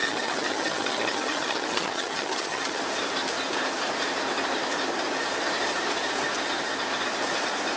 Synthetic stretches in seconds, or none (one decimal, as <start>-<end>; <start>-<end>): 0.0-2.8